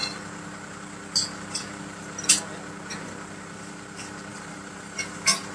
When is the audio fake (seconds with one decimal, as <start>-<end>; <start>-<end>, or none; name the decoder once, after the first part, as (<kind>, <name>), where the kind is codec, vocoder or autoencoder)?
4.3-5.5 (vocoder, BigVGAN v2)